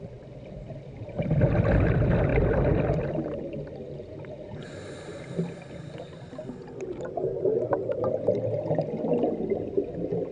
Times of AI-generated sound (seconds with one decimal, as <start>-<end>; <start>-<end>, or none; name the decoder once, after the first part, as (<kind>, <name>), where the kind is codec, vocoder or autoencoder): none